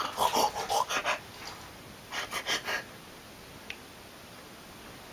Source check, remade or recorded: recorded